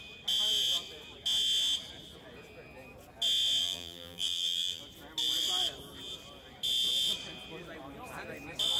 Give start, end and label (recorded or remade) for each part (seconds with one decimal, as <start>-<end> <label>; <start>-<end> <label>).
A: 0.0-3.6 recorded; 3.6-4.8 remade; 4.8-8.8 recorded